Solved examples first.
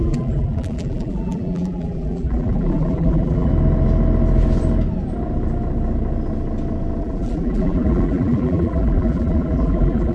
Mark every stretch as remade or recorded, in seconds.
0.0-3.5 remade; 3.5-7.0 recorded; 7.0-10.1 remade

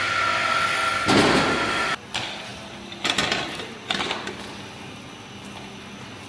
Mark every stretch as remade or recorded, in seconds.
0.0-0.5 recorded; 0.5-1.9 remade; 1.9-6.3 recorded

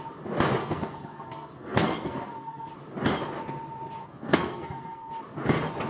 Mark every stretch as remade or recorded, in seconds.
0.0-0.6 recorded; 0.6-2.7 remade; 2.7-4.0 recorded; 4.0-5.1 remade; 5.1-5.9 recorded

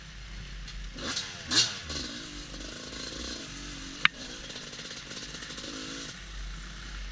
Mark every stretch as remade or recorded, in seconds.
0.0-7.1 recorded

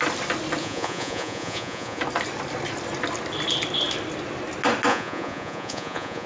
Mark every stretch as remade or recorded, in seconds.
0.0-0.6 recorded; 0.6-2.0 remade; 2.0-4.9 recorded; 4.9-6.3 remade

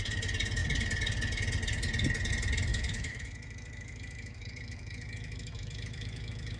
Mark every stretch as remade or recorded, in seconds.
0.0-2.7 recorded; 2.7-6.6 remade

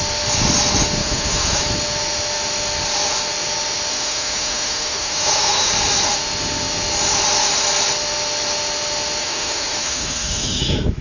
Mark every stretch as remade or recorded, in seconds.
0.0-1.0 recorded; 1.0-1.6 remade; 1.6-3.9 recorded; 3.9-5.7 remade; 5.7-9.2 recorded; 9.2-11.0 remade